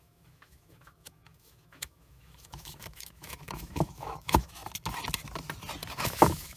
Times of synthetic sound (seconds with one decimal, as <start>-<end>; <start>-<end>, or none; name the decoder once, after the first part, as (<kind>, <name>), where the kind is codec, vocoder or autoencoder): 0.0-4.6 (autoencoder, DAC-VAE); 6.0-6.6